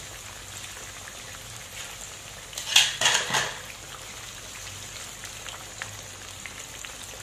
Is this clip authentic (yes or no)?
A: yes